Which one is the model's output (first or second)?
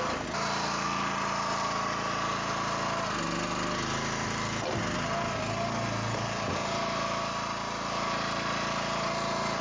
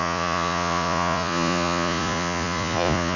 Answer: second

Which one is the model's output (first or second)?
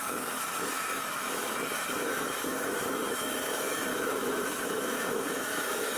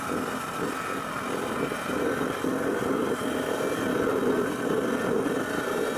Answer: first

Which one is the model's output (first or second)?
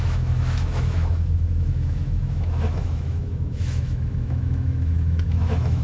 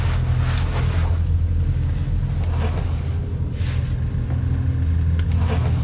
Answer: first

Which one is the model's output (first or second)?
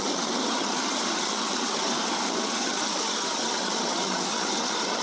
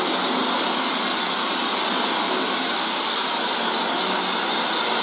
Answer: first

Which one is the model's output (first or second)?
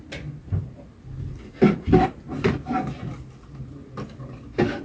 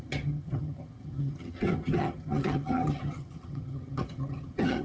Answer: second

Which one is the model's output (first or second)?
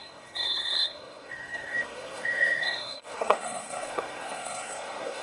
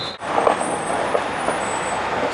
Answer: first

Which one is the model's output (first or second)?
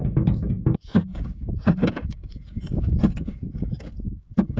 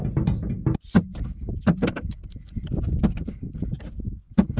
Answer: first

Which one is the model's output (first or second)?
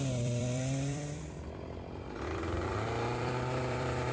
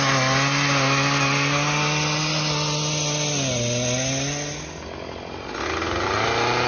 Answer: first